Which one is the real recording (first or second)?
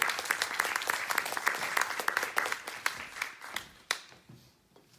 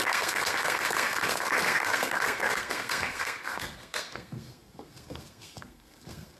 first